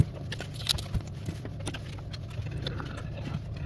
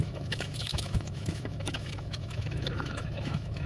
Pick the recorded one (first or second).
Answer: first